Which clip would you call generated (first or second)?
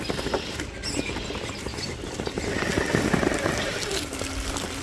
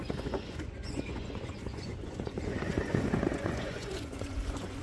second